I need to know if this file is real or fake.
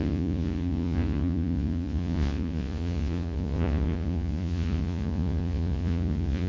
fake